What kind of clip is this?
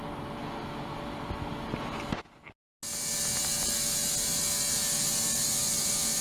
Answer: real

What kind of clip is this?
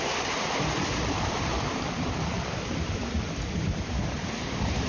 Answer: fake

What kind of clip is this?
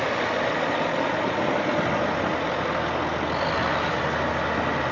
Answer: real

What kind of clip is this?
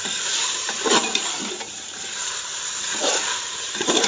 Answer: fake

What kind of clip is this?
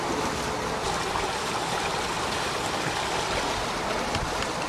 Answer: real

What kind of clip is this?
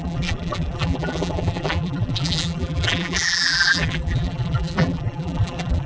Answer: fake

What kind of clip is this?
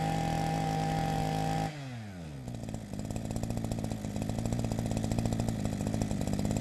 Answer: real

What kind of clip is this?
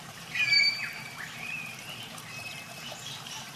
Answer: fake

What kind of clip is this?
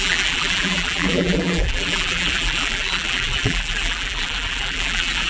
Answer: fake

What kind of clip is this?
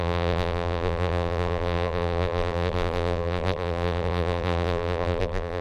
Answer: fake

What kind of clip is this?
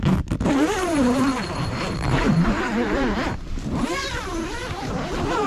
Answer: fake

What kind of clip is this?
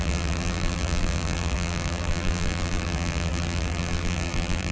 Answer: fake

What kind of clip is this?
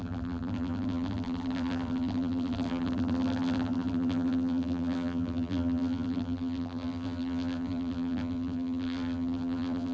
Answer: fake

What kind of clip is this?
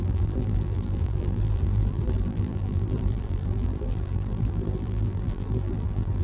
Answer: fake